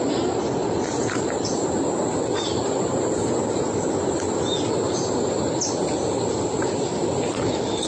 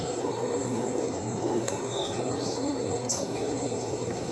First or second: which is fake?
second